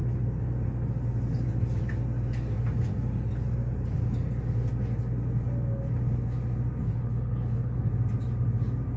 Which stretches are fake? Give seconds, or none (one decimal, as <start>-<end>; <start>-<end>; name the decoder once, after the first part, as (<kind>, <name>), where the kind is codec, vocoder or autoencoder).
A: 6.8-7.9 (codec, HILCodec)